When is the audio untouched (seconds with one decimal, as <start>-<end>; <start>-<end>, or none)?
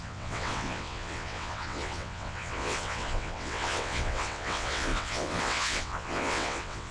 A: none